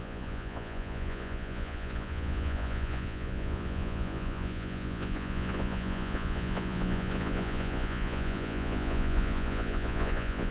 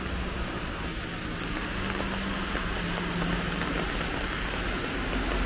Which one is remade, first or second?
first